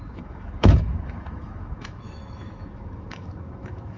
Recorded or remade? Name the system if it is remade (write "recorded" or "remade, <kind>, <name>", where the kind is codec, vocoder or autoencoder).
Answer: remade, autoencoder, DAC-VAE